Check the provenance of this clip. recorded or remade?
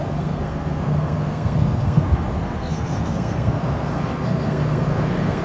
remade